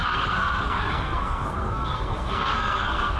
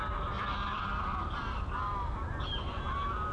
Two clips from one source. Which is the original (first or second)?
second